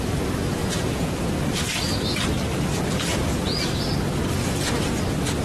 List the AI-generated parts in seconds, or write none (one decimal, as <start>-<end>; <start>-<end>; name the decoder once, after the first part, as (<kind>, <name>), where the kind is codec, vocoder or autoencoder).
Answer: 0.6-1.2 (vocoder, Vocos); 3.1-3.6